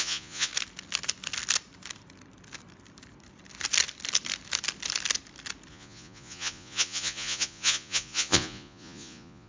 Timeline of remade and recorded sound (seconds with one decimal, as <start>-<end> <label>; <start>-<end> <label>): 0.0-0.5 remade; 0.5-5.7 recorded; 5.7-9.5 remade